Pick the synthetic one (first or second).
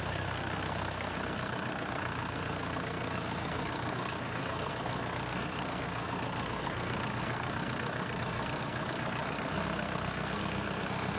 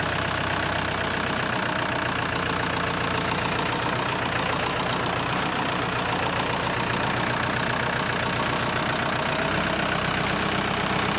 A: first